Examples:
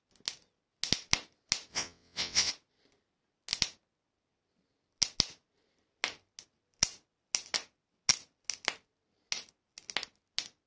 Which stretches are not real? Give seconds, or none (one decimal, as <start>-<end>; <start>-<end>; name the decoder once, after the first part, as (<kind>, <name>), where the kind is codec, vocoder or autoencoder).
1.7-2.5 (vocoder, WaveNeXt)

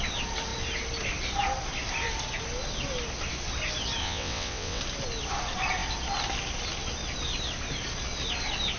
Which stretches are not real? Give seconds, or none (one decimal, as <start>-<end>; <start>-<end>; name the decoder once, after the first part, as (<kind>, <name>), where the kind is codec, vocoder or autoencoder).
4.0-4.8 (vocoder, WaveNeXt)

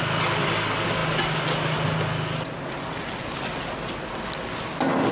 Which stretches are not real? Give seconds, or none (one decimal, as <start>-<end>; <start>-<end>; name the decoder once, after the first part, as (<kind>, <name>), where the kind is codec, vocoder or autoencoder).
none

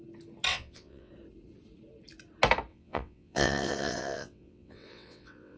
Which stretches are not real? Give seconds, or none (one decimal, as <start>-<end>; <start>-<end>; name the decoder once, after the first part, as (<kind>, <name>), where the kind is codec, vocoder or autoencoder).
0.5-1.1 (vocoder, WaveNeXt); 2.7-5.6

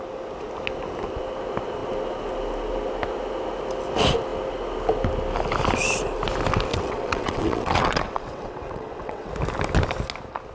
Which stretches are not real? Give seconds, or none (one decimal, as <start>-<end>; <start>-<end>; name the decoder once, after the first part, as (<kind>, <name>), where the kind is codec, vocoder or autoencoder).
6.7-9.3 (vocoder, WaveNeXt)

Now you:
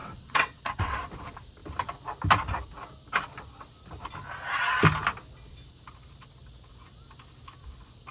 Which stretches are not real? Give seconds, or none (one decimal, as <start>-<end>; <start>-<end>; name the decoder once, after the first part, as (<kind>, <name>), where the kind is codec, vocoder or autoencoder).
0.0-1.0 (vocoder, WaveNeXt)